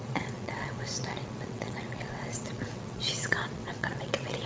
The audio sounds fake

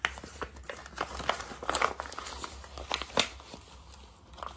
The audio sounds real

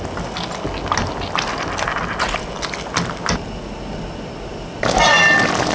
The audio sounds real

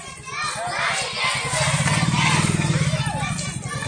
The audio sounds real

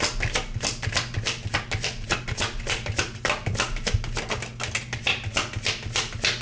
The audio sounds real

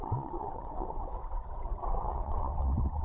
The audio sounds fake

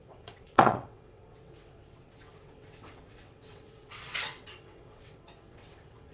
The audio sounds fake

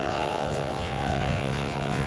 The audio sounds fake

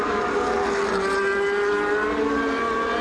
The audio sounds real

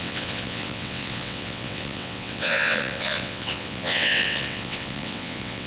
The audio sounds fake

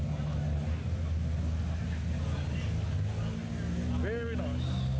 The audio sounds real